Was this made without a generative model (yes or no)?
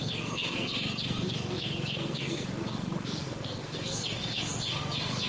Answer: no